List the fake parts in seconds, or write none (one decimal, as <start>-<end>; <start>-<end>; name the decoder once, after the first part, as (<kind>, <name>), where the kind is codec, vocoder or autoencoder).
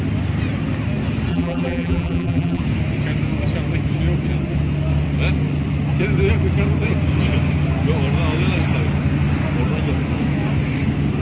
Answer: 1.3-2.6 (vocoder, BigVGAN v2)